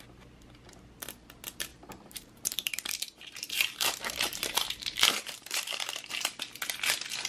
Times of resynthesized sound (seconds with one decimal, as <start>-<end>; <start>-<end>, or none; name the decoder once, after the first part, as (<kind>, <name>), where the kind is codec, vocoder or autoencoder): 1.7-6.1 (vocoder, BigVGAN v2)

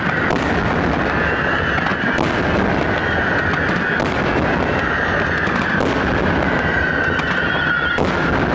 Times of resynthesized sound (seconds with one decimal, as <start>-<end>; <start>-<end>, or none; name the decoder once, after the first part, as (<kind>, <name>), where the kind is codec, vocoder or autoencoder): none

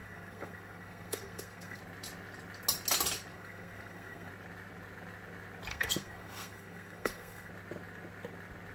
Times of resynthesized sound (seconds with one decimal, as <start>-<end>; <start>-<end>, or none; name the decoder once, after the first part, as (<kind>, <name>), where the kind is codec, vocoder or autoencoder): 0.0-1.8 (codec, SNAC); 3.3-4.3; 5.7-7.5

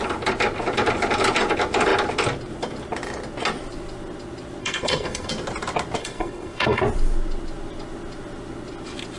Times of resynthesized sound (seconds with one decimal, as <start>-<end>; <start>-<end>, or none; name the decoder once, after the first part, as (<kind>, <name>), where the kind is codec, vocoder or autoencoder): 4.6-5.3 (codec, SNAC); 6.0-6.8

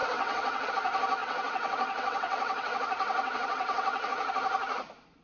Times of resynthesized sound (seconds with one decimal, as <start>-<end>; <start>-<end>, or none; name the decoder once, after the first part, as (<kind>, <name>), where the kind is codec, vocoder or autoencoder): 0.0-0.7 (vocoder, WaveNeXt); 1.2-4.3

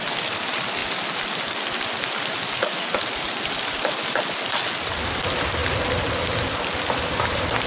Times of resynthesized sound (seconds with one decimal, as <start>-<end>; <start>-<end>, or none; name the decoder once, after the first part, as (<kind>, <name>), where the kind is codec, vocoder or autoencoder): none

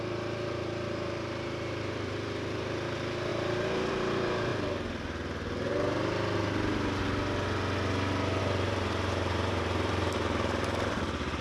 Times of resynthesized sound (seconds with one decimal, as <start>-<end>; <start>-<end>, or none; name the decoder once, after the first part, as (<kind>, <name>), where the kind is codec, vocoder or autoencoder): 0.0-4.5 (vocoder, BigVGAN v2); 8.4-11.4

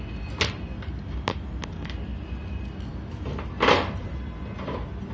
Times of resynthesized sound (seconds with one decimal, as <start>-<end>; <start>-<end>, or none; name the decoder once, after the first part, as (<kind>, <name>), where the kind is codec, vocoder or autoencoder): none